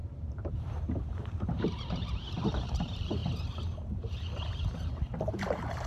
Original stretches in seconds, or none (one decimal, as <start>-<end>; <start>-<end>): 3.2-5.3